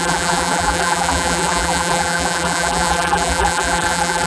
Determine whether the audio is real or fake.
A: fake